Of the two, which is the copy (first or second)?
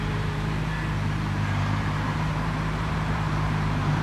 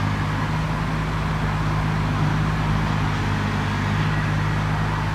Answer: first